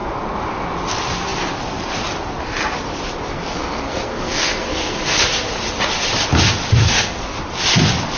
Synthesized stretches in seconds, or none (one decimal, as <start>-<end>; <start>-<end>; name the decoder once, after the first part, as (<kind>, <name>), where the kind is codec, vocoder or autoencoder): 3.3-5.2 (codec, SNAC); 6.8-7.4